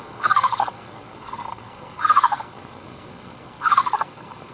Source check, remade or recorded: remade